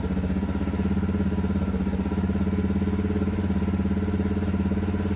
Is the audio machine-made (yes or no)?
no